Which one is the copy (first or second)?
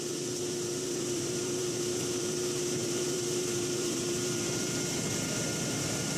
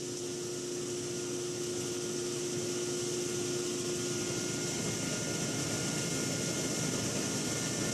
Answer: first